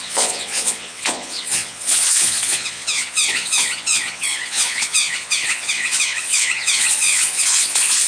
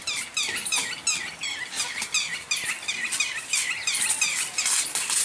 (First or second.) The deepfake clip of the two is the first